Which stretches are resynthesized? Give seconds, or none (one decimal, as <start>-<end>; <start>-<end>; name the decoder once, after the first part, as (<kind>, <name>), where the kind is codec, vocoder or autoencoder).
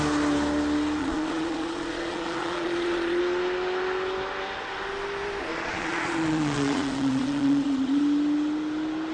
1.0-3.2 (vocoder, Vocos); 5.5-8.0